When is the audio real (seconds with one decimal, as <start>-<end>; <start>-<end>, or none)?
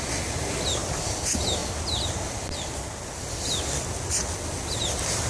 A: 0.0-5.3